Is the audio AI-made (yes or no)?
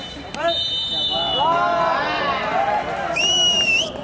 no